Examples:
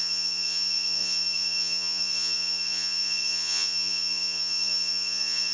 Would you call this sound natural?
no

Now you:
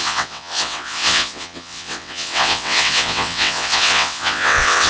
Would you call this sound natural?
no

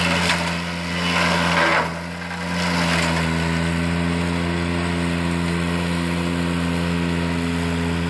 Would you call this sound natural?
yes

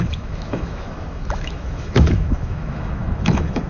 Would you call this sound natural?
no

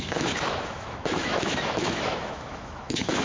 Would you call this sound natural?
no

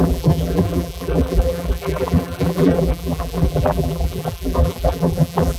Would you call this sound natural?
no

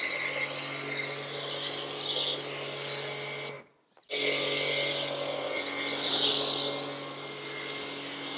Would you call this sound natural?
yes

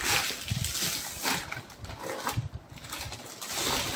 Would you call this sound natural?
yes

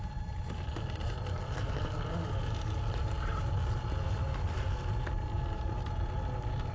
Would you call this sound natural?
yes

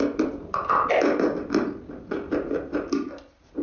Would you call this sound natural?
yes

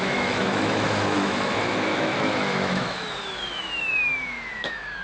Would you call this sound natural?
no